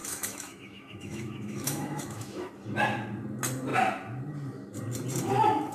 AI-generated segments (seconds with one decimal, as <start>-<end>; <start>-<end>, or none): 0.0-2.5